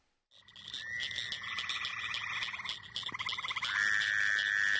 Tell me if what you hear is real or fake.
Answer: real